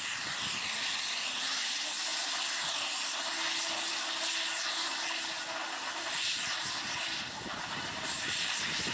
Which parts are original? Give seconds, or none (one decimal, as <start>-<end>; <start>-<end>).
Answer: 0.0-8.9

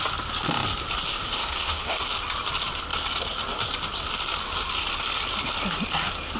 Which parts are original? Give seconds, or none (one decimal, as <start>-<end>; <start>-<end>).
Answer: 0.0-1.1; 2.0-6.4

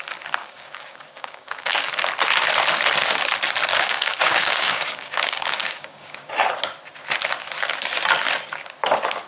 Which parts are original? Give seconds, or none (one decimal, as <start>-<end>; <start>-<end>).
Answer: 0.0-0.4; 1.9-3.7; 6.3-9.3

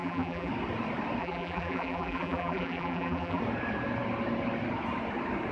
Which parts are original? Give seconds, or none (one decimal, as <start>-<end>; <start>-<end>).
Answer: 0.5-1.2; 3.4-5.5

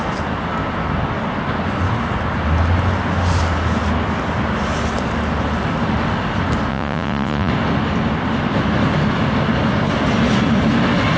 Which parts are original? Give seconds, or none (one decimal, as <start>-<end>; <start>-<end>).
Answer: 0.0-6.7; 7.5-11.2

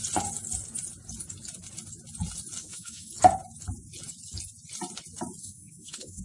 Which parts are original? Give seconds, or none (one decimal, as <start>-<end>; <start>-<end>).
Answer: 0.0-2.6; 3.1-5.4

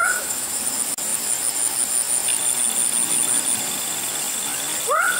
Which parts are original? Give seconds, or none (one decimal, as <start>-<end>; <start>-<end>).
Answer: 0.6-5.2

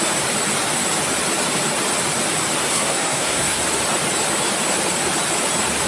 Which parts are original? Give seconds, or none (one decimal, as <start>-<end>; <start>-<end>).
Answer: 0.0-2.6; 3.6-5.9